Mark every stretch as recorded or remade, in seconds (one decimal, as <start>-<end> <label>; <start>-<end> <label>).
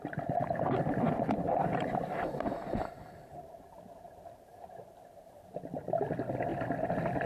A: 0.0-1.7 recorded; 1.7-3.6 remade; 3.6-7.3 recorded